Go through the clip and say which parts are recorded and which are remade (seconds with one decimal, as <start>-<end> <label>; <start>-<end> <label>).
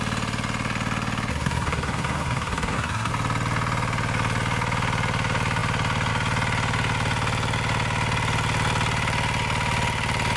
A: 0.0-1.3 recorded; 1.3-3.1 remade; 3.1-10.4 recorded